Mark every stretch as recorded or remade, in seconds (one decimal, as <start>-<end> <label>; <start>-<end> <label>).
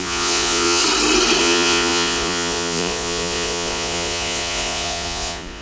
0.0-0.8 remade; 0.8-1.4 recorded; 1.4-5.6 remade